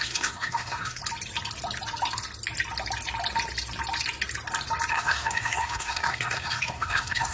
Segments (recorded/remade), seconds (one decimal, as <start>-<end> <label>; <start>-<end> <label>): 0.0-1.0 remade; 1.0-4.9 recorded; 4.9-7.3 remade